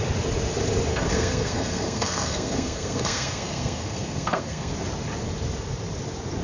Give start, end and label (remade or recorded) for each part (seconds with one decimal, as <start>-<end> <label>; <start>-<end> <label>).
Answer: 0.0-0.9 recorded; 0.9-4.7 remade; 4.7-6.4 recorded